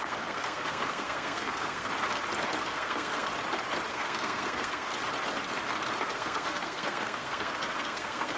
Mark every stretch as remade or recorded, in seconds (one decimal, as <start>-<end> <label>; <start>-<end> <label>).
0.0-1.9 remade; 1.9-2.6 recorded; 2.6-3.3 remade; 3.3-3.9 recorded; 3.9-4.9 remade; 4.9-6.0 recorded; 6.0-8.4 remade

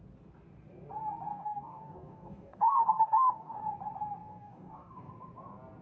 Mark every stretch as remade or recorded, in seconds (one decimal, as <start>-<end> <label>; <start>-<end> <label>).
0.0-1.3 recorded; 1.3-3.6 remade; 3.6-4.3 recorded; 4.3-5.1 remade; 5.1-5.8 recorded

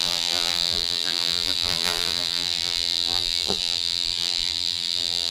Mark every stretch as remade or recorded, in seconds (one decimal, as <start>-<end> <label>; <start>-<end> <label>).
0.0-5.3 remade

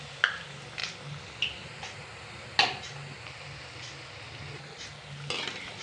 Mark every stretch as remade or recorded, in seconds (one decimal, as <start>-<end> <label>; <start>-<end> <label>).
0.0-5.8 recorded

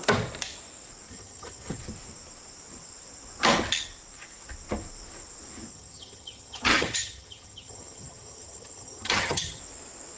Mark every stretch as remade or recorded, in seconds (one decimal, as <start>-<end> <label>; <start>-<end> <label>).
0.0-1.1 recorded; 1.1-1.8 remade; 1.8-5.7 recorded; 5.7-9.6 remade; 9.6-10.2 recorded